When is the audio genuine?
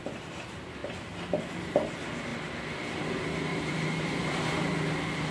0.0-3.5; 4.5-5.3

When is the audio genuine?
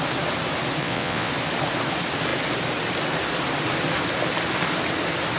0.0-0.8; 1.3-5.4